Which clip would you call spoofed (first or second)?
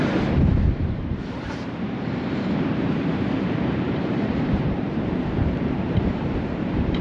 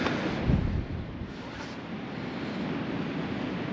first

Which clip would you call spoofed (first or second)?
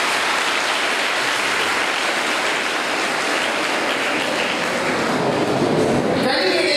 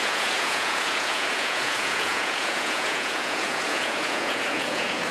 second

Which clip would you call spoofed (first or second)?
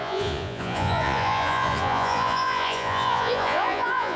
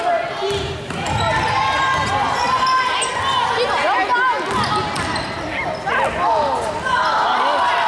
first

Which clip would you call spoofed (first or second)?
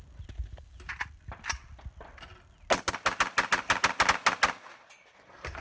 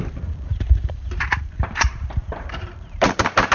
second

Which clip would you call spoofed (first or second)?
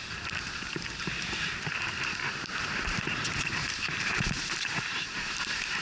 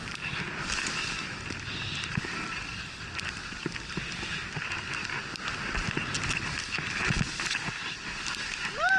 first